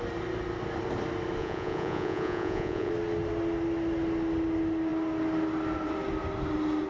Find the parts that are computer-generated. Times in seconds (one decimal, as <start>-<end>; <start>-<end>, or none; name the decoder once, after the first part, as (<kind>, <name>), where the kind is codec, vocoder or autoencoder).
1.4-2.9 (vocoder, Vocos)